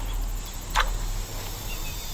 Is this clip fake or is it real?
real